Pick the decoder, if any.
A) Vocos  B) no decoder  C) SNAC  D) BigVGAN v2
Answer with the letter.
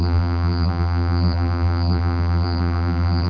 D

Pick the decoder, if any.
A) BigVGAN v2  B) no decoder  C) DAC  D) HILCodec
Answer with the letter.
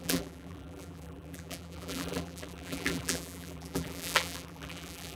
A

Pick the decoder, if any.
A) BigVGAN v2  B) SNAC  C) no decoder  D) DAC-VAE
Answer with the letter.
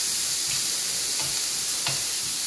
C